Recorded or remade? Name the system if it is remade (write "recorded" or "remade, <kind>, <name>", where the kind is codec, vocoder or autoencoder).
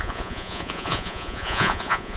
remade, vocoder, Vocos